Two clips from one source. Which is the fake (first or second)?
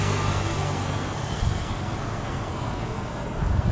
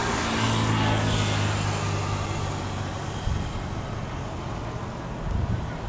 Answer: first